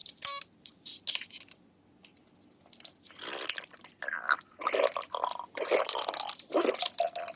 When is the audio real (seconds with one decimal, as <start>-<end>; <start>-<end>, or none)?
0.0-7.4